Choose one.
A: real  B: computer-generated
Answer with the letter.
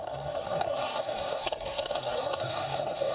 B